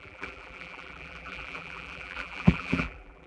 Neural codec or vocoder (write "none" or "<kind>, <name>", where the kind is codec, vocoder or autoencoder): vocoder, BigVGAN v2